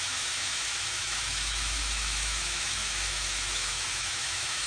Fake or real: fake